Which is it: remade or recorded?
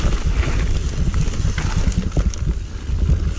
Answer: recorded